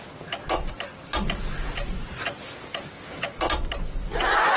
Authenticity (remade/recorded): recorded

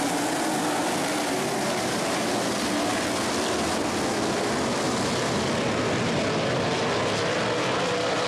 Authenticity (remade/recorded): recorded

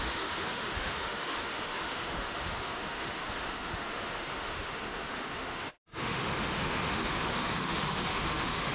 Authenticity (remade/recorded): remade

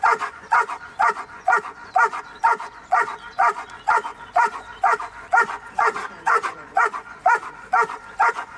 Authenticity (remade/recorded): remade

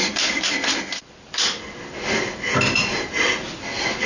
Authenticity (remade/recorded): remade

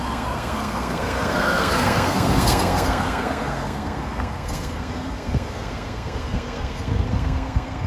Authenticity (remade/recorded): remade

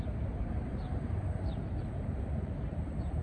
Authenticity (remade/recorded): remade